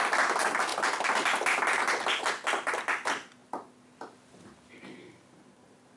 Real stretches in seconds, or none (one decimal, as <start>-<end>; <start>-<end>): 0.0-6.0